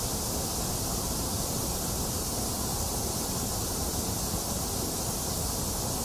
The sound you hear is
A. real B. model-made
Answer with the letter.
A